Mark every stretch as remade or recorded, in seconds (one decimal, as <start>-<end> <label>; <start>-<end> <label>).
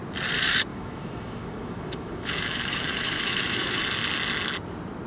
0.0-0.7 recorded; 0.7-3.8 remade; 3.8-5.1 recorded